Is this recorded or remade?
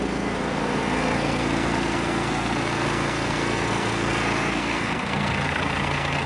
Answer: remade